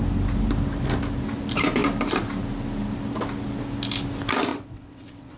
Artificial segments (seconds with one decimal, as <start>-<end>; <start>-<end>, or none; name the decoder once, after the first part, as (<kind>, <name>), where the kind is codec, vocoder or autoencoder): 4.5-5.4 (vocoder, WaveNeXt)